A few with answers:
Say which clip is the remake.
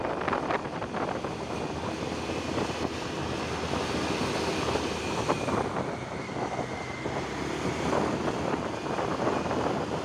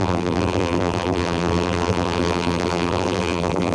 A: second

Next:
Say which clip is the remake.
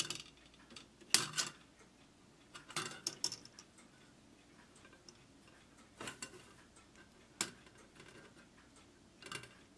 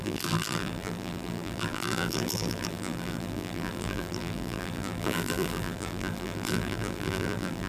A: second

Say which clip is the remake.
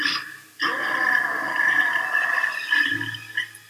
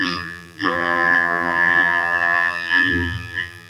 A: second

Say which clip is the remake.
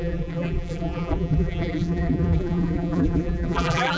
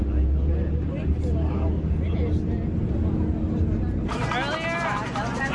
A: first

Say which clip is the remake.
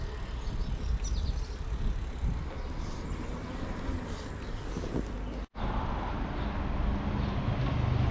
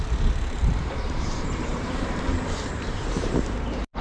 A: second